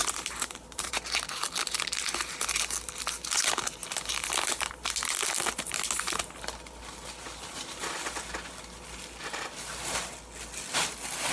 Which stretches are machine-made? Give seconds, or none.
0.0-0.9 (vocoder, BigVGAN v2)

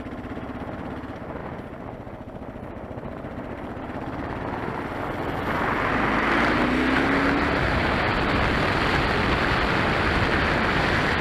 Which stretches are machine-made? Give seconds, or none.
none

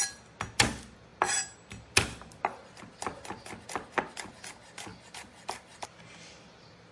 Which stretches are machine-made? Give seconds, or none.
4.9-6.0 (vocoder, BigVGAN v2)

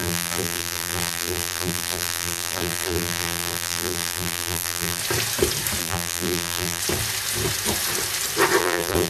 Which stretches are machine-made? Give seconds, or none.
0.0-5.0 (vocoder, BigVGAN v2); 5.8-6.8; 8.6-9.1

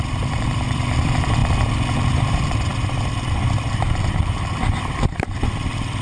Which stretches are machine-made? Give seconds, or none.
0.0-1.4 (vocoder, BigVGAN v2); 2.1-2.7; 3.8-6.0